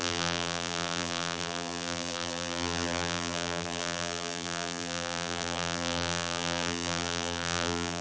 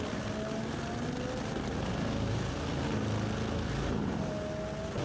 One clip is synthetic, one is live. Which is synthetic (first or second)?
first